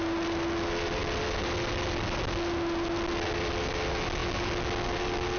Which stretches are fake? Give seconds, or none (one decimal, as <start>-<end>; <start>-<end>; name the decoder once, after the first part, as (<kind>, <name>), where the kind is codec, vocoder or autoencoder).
none